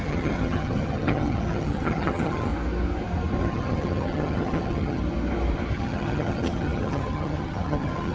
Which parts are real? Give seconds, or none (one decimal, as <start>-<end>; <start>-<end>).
2.5-3.4; 5.0-5.7